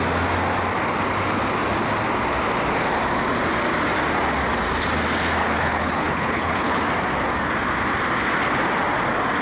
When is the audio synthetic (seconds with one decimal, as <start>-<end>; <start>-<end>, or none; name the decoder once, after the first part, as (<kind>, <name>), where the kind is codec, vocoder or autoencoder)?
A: 5.4-6.8 (codec, HILCodec)